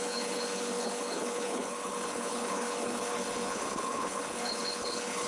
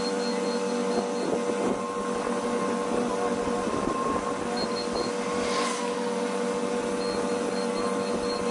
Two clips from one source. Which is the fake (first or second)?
first